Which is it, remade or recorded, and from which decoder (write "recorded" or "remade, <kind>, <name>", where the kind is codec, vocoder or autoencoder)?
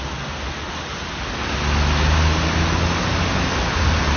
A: recorded